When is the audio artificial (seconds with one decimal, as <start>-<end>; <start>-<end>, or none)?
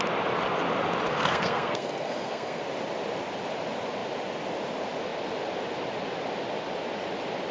1.1-2.6